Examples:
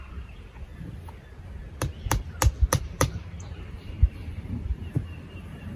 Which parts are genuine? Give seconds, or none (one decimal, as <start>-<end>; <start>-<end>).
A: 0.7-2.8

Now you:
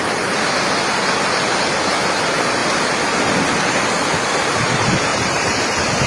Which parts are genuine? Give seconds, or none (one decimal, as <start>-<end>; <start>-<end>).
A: 0.0-5.1; 5.6-6.1

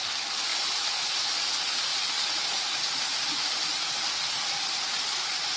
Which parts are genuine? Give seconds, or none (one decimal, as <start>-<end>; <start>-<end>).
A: 0.0-0.5; 1.2-5.6

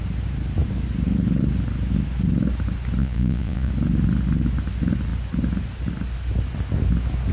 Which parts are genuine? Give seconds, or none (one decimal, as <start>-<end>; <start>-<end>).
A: 0.0-3.0; 3.7-7.3